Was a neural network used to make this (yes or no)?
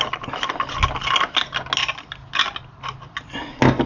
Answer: no